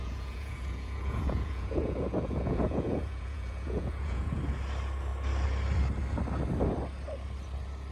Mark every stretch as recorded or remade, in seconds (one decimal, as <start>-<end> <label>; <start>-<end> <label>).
0.0-4.4 remade; 4.4-7.9 recorded